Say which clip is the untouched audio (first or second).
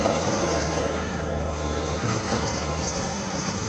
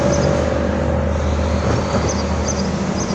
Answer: second